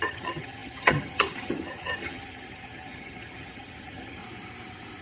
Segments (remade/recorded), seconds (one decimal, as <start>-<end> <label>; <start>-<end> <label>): 0.0-4.2 remade; 4.2-5.0 recorded